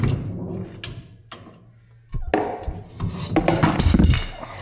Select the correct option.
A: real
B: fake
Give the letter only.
A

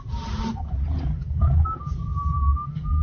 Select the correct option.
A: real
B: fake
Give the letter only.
A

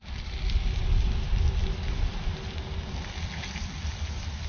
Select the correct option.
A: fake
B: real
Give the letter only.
B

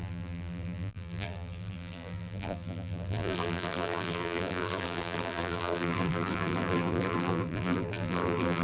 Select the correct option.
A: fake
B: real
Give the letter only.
A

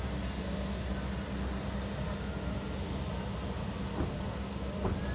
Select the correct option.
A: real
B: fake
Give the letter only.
A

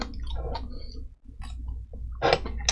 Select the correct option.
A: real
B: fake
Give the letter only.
A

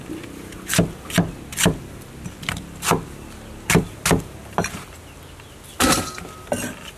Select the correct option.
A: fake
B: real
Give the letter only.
B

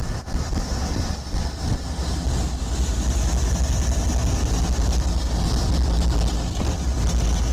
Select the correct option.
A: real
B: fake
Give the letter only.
A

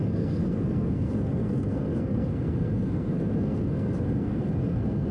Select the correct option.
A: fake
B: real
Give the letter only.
A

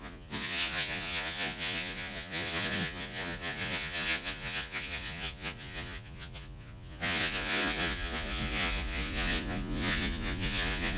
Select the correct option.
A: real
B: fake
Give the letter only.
B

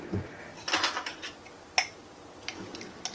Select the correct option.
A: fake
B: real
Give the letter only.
B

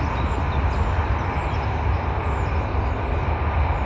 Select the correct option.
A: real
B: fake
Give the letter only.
A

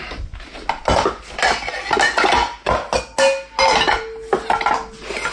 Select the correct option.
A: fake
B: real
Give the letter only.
B